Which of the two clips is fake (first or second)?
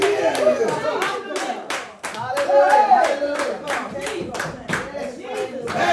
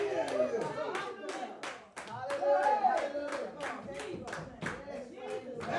first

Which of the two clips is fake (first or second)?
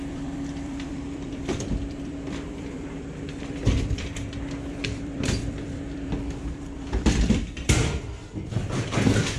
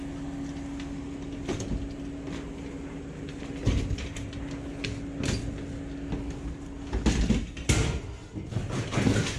first